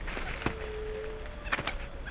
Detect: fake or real real